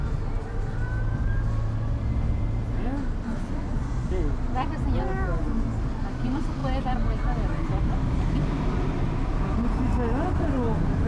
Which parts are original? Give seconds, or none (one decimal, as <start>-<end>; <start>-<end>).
0.0-11.1

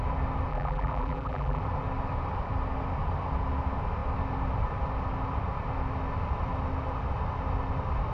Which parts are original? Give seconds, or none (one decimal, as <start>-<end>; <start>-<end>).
0.0-0.5; 1.6-8.1

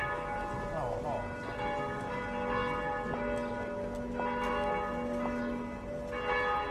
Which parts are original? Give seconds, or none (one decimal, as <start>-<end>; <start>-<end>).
0.0-6.7

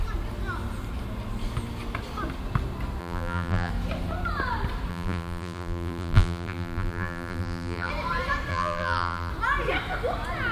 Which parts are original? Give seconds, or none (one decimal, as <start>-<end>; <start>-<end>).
0.0-3.0; 3.7-4.9; 7.9-8.5; 9.3-10.5

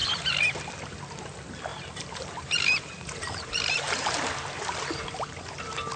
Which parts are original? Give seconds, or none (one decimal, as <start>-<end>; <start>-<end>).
0.6-1.7; 5.3-6.0